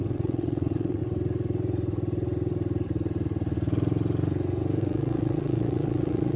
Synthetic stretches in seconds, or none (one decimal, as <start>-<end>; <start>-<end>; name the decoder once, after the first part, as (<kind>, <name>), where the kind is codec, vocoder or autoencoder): 0.0-1.0 (vocoder, WaveNeXt); 4.8-6.4